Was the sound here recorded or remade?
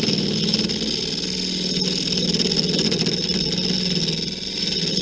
recorded